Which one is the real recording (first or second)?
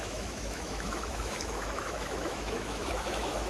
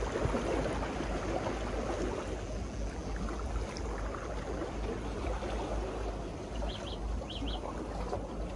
second